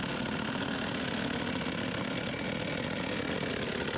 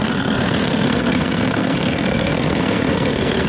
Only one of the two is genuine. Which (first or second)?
first